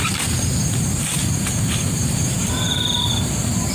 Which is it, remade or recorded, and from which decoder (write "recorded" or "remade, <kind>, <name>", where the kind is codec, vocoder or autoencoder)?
remade, vocoder, BigVGAN v2